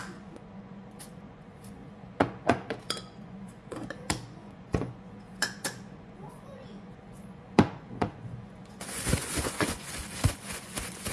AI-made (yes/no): yes